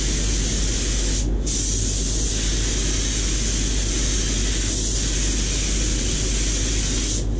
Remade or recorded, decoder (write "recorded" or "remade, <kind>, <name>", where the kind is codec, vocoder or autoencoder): recorded